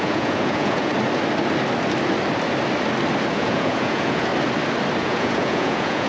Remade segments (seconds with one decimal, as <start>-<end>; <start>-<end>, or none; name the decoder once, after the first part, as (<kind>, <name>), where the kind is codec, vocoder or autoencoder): 0.0-0.9 (vocoder, Vocos); 3.3-4.3; 5.0-6.1